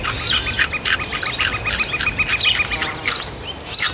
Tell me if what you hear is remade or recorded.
recorded